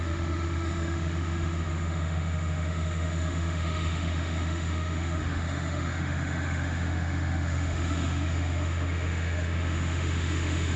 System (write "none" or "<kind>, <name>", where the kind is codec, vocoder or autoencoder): autoencoder, DAC-VAE